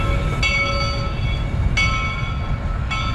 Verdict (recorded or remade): recorded